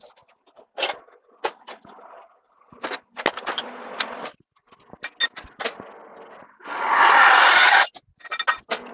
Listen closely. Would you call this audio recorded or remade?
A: recorded